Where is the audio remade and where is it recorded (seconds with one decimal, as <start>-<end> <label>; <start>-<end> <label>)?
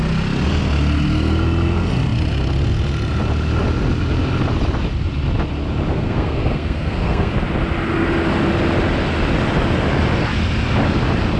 0.0-5.9 recorded; 5.9-7.3 remade; 7.3-11.4 recorded